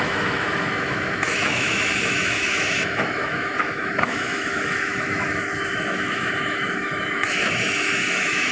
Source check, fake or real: fake